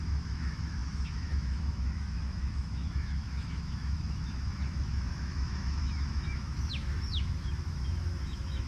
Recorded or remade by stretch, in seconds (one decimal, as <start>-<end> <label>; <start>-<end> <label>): 0.0-8.7 remade